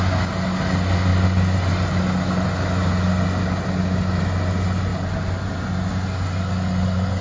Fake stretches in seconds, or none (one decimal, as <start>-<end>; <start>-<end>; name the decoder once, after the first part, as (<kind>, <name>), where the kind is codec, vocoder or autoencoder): none